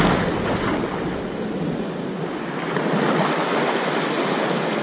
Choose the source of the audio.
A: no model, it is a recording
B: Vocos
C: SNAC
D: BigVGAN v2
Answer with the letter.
A